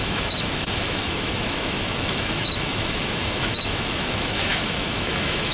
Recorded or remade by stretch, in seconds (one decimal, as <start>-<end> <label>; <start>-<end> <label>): 0.0-5.5 remade